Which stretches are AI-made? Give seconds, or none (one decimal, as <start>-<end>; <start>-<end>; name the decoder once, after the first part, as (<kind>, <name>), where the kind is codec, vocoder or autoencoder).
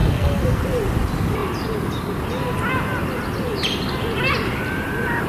0.0-0.6 (codec, SNAC)